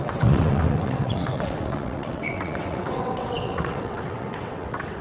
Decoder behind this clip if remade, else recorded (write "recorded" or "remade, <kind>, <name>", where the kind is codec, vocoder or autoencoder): remade, vocoder, WaveNeXt